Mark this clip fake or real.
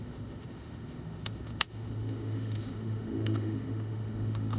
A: fake